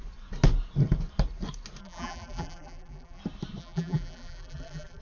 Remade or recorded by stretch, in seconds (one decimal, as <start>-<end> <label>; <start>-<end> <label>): 0.0-1.8 recorded; 1.8-3.2 remade; 3.2-3.6 recorded; 3.6-5.0 remade